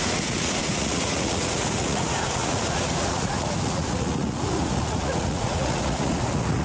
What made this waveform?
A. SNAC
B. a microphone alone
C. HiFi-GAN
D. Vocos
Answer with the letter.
D